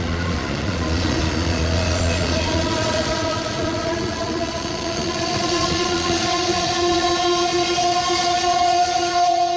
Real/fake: fake